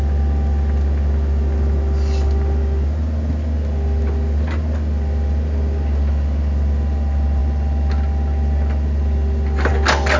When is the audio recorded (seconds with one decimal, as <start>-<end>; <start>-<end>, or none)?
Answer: 0.0-10.2